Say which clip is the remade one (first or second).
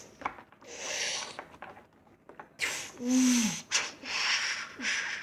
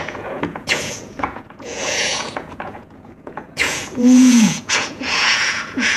second